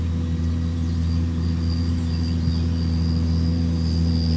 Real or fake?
real